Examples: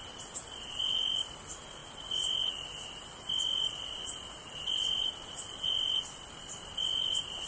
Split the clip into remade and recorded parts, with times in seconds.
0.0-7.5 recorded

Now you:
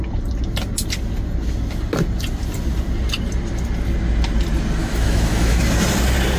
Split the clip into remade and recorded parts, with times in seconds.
0.0-4.8 recorded; 4.8-5.6 remade; 5.6-6.4 recorded

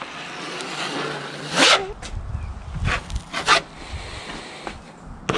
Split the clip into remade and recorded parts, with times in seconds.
0.0-5.4 recorded

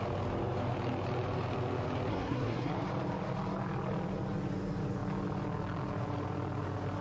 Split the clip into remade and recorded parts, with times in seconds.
0.0-2.1 recorded; 2.1-2.7 remade; 2.7-7.0 recorded

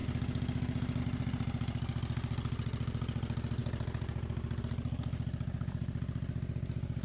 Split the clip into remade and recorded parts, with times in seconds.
0.0-7.0 recorded

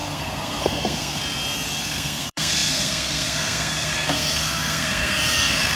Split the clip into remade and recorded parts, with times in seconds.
0.0-1.2 remade; 1.2-1.8 recorded; 1.8-5.8 remade